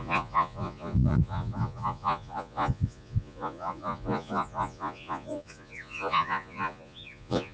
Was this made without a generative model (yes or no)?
no